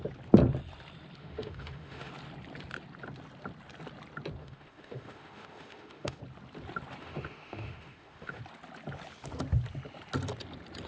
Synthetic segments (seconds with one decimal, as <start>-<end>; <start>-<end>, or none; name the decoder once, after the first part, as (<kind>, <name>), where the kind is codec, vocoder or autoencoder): 1.2-2.1 (autoencoder, DAC-VAE); 4.4-6.2; 7.0-8.4